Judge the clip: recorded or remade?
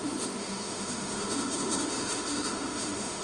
remade